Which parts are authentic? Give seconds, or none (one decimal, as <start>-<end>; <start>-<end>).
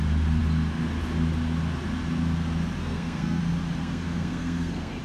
0.0-2.8; 3.4-3.8